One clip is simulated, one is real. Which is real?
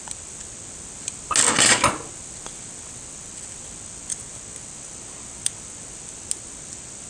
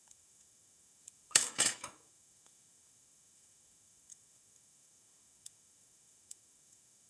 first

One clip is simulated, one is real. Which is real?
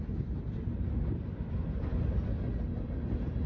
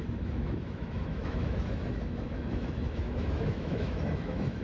first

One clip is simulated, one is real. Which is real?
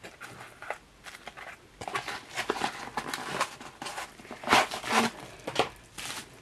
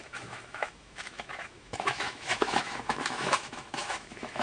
first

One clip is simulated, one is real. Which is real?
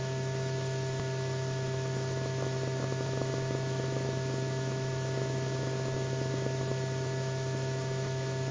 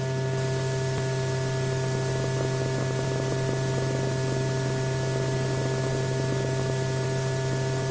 second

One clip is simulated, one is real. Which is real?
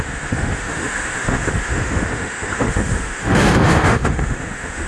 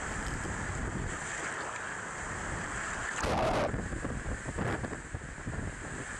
second